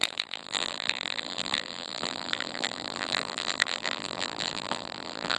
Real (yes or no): no